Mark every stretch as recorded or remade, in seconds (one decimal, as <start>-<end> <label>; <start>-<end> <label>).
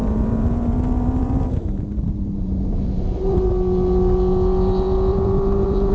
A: 0.0-3.5 remade; 3.5-5.1 recorded; 5.1-5.9 remade